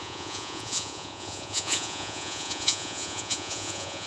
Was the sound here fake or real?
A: fake